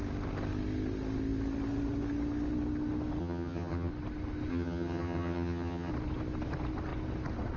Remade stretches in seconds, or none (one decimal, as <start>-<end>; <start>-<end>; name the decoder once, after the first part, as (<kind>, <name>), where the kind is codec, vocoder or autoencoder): 3.2-3.9 (vocoder, HiFi-GAN); 4.5-5.9